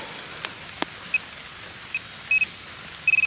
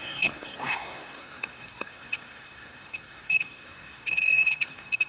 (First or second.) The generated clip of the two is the second